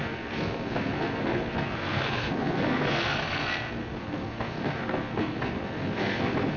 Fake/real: fake